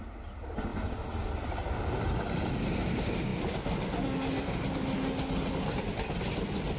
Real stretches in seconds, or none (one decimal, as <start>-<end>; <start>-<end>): 0.0-6.8